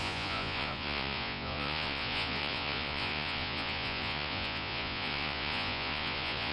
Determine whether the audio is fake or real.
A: fake